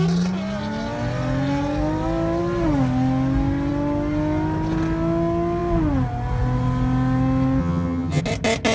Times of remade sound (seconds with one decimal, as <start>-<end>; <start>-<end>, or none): 7.6-8.2